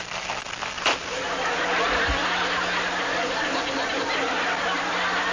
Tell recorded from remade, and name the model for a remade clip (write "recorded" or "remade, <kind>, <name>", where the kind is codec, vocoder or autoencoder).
recorded